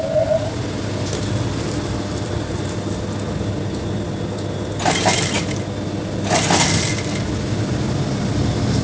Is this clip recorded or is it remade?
recorded